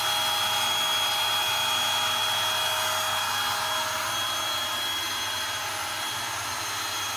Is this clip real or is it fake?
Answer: real